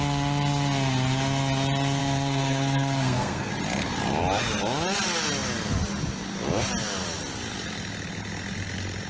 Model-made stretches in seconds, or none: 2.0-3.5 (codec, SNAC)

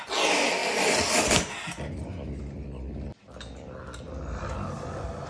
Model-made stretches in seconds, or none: none